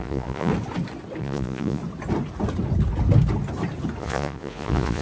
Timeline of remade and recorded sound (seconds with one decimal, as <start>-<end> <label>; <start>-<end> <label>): 0.0-0.5 remade; 0.5-1.2 recorded; 1.2-1.8 remade; 1.8-4.0 recorded; 4.0-5.0 remade